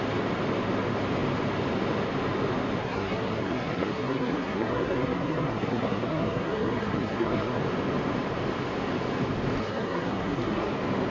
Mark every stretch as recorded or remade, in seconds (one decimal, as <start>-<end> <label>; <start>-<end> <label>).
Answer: 0.0-2.8 recorded; 2.8-7.6 remade; 7.6-9.6 recorded; 9.6-10.7 remade; 10.7-11.1 recorded